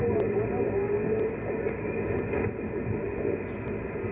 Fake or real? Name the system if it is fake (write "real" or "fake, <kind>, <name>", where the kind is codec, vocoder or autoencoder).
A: real